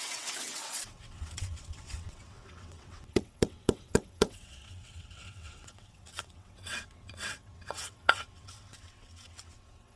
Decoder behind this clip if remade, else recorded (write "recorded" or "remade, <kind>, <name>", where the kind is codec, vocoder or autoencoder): remade, vocoder, WaveNeXt